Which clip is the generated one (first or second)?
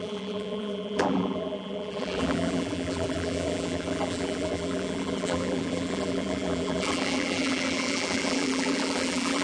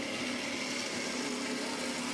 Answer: first